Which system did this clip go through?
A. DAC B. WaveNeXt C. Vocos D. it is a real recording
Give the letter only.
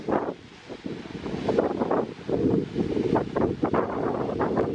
D